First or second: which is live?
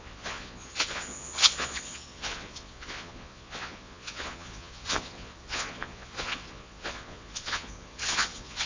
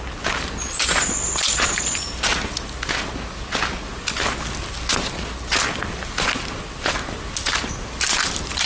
second